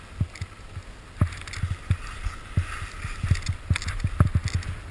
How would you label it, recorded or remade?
recorded